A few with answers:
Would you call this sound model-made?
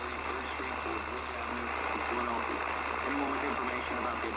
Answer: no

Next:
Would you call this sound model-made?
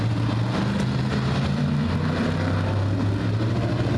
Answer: no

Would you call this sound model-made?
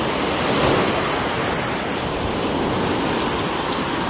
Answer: no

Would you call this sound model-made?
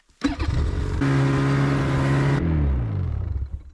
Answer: no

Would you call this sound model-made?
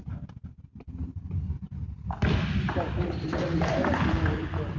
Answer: no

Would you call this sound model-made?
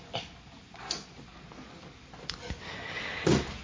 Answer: no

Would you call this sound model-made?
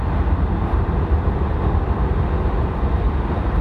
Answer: yes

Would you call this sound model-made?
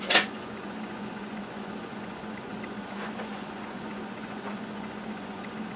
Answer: yes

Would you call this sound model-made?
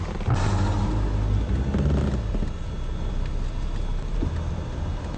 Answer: no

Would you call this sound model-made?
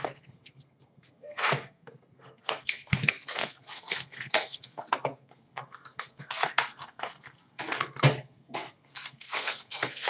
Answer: yes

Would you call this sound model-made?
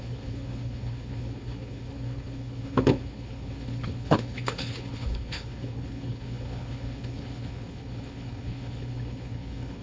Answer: yes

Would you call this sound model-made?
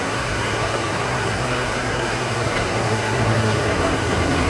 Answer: yes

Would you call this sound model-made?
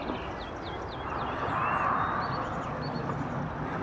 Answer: no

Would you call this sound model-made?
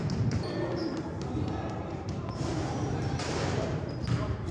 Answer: yes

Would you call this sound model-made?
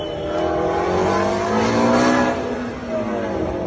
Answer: no